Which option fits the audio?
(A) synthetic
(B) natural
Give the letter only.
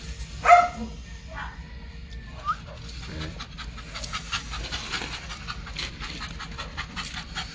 B